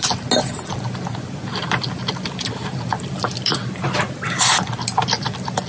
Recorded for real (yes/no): yes